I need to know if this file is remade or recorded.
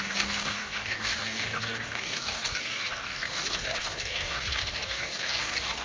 remade